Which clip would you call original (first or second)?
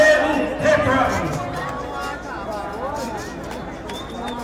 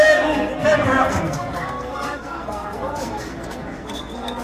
first